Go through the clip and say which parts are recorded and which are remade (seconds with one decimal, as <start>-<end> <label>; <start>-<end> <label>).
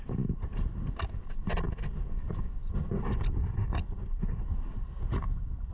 0.0-5.7 recorded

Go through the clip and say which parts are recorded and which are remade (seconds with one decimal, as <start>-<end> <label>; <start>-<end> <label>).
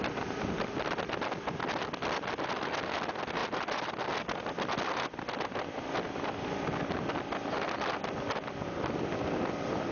0.0-9.9 recorded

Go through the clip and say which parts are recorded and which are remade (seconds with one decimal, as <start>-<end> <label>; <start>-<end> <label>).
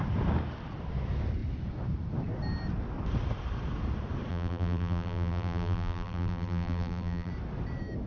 0.0-4.3 recorded; 4.3-7.3 remade; 7.3-8.1 recorded